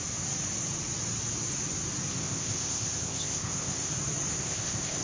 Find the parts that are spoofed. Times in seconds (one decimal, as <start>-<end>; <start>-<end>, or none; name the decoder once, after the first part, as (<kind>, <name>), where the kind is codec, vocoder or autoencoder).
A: 2.1-3.9 (codec, ZipCodec); 4.3-5.0